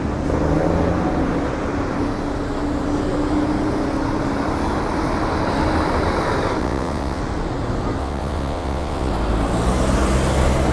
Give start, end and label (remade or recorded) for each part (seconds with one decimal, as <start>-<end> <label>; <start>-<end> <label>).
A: 0.0-6.6 recorded; 6.6-7.2 remade; 7.2-8.0 recorded; 8.0-9.1 remade; 9.1-10.7 recorded